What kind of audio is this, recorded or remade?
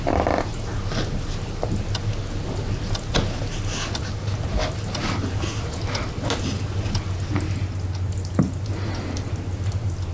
recorded